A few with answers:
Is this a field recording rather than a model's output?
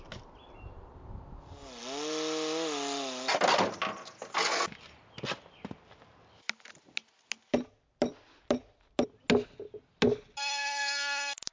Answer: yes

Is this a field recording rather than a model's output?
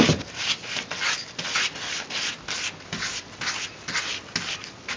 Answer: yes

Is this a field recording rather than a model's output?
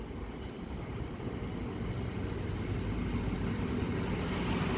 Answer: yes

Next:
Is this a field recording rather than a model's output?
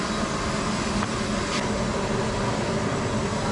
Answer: yes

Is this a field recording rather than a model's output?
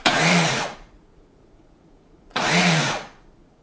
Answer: no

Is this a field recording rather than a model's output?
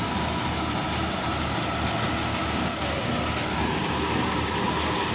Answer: yes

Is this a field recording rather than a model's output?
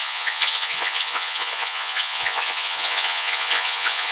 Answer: no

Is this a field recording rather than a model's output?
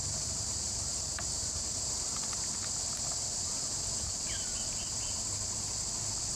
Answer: yes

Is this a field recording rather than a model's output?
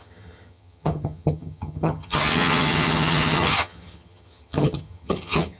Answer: no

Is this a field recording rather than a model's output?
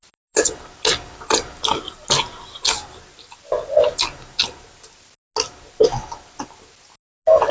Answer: yes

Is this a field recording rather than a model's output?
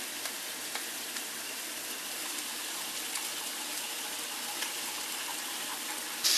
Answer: yes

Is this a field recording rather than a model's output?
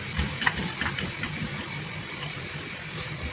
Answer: yes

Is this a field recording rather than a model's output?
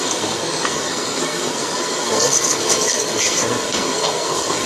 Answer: no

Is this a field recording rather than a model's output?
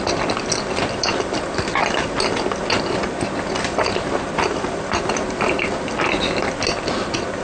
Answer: yes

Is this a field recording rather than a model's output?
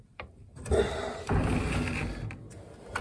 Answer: yes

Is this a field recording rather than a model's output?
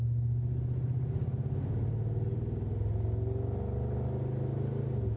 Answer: yes